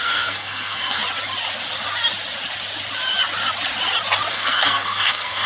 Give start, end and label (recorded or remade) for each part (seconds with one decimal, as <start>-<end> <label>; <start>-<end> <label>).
0.0-1.0 remade; 1.0-4.3 recorded; 4.3-5.5 remade